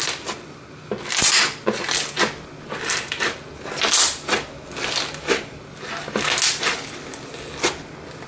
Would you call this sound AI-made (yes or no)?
no